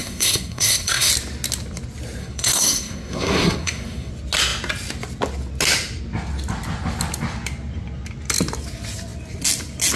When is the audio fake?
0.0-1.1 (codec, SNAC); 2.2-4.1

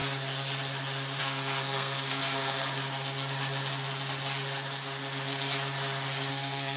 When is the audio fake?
1.2-2.2 (codec, SNAC); 6.3-6.8

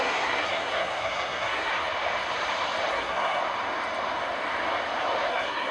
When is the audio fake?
0.0-1.7 (codec, SNAC); 2.9-3.4; 5.3-5.7

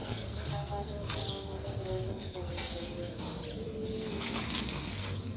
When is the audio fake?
0.0-3.2 (codec, SNAC); 3.9-5.4

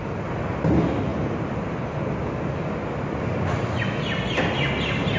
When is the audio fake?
none